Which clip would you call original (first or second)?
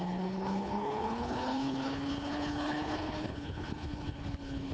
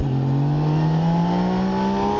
second